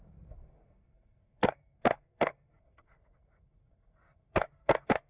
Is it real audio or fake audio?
fake